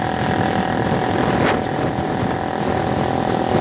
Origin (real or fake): real